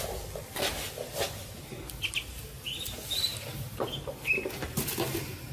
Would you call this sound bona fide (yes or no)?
yes